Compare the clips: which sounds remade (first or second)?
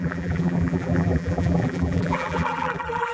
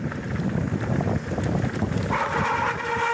first